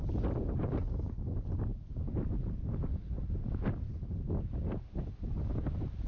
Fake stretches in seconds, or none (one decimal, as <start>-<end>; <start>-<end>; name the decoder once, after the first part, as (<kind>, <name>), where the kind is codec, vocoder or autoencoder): 1.7-3.5 (vocoder, BigVGAN v2)